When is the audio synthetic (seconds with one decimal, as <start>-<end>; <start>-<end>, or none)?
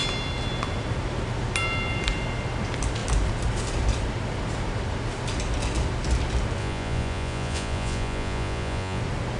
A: 6.6-9.0